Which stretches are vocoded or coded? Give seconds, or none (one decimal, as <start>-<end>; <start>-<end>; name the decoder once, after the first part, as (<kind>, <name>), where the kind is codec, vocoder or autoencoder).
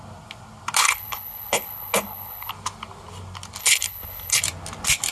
0.8-2.5 (codec, HILCodec); 3.6-4.4